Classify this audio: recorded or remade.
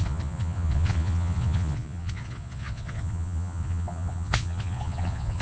remade